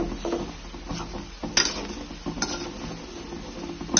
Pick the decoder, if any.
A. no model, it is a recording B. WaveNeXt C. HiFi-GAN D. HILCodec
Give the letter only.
A